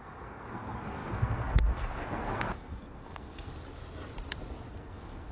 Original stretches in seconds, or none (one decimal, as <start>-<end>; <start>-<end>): 3.5-4.7